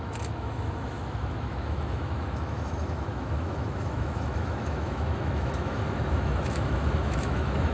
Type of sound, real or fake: fake